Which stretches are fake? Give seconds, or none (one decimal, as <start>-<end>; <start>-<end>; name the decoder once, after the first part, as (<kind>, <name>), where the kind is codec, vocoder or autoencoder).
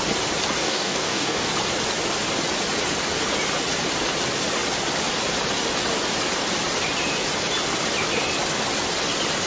0.6-1.5 (codec, DAC)